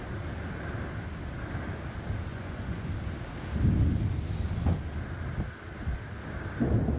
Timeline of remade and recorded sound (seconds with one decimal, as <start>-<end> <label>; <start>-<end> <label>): 0.0-2.3 recorded; 2.3-2.9 remade; 2.9-7.0 recorded